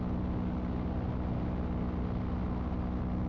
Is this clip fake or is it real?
real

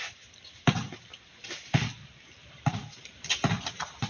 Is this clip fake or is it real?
real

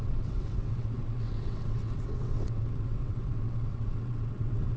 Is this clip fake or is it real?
fake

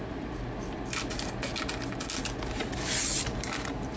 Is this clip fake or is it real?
real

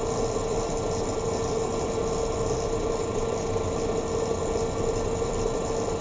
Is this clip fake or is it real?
real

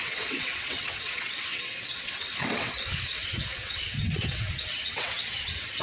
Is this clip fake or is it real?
fake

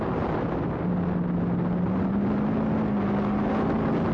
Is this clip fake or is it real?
real